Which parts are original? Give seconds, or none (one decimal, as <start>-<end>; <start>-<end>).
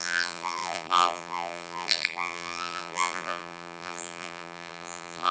none